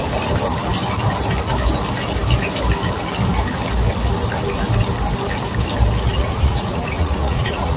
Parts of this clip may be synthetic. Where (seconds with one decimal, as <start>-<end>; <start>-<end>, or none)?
6.1-7.8